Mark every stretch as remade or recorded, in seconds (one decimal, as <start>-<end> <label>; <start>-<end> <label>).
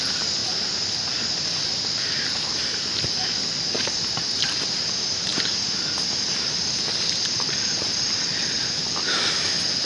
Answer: 0.0-9.9 recorded